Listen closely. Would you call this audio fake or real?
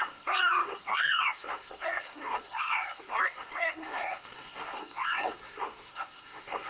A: fake